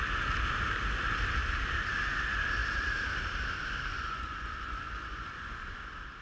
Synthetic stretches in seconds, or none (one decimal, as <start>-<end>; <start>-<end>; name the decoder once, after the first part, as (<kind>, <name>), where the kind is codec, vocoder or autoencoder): 3.9-5.8 (vocoder, Vocos)